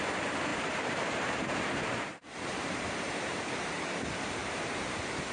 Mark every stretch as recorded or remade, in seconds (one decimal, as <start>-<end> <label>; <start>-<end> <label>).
0.0-0.5 recorded; 0.5-3.7 remade; 3.7-4.4 recorded; 4.4-5.3 remade